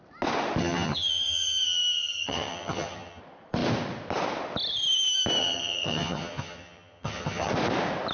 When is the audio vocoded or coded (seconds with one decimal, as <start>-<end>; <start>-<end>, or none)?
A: 0.6-3.2; 5.4-7.5